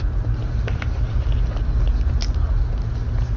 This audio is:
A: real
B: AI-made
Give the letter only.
A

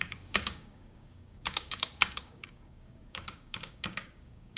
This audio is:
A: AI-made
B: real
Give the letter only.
A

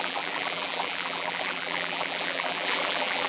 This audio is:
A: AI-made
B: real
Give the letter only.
A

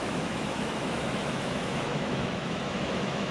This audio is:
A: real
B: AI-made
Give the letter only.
B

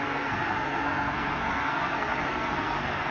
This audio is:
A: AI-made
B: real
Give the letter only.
A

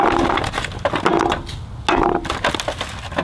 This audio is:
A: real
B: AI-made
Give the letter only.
A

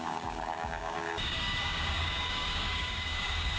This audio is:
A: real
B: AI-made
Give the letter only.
B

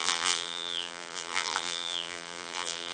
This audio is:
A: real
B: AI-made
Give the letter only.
B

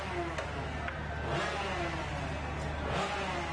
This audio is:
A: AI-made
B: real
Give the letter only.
B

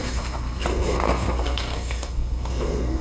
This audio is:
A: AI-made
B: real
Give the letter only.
A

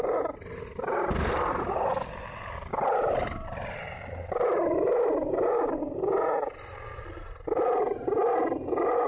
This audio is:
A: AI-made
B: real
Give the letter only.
B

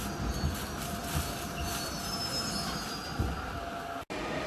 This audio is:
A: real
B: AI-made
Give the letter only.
A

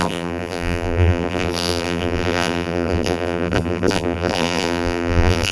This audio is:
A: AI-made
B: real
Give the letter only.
A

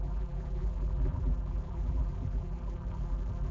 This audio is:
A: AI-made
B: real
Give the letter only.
A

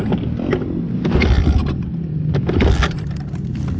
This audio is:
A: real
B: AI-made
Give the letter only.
A